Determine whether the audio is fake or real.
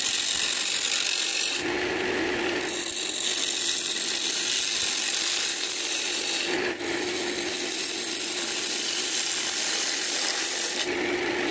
real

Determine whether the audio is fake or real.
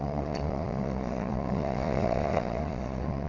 fake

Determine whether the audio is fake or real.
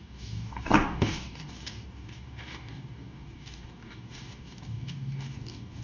fake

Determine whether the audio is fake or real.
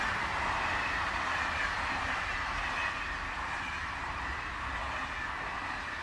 real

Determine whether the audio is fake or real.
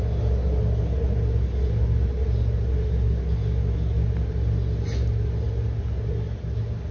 real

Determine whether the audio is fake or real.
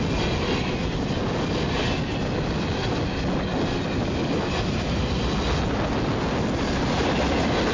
real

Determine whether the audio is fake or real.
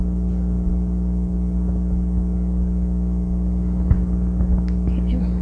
real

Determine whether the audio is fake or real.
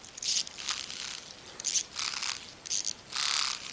real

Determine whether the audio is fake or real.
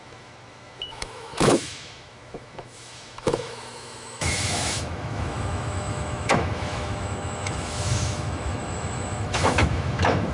fake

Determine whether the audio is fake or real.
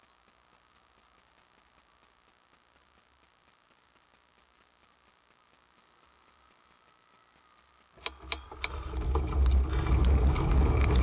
real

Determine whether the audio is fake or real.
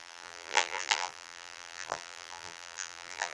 fake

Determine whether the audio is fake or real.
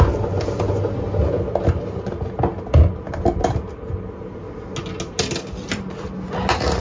real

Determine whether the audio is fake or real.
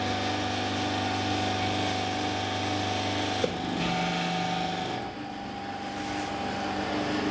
real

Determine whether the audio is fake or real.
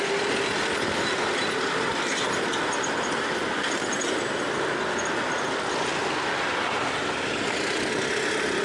real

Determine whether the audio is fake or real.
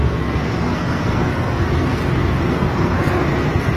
fake